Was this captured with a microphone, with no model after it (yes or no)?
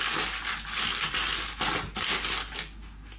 yes